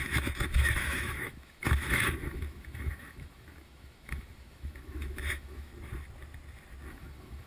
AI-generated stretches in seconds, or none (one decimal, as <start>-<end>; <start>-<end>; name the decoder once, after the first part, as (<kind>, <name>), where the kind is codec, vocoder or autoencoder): 0.0-5.7 (autoencoder, DAC-VAE); 6.9-7.5